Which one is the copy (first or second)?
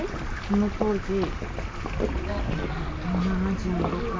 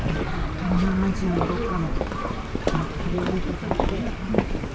second